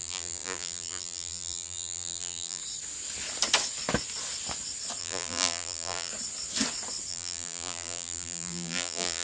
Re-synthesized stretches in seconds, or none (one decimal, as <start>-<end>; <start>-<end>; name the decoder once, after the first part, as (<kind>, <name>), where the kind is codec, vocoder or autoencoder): 0.0-2.6 (vocoder, BigVGAN v2); 5.0-6.1; 7.1-9.2